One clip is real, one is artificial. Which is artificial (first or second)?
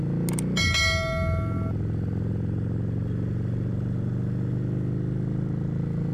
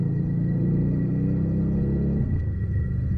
second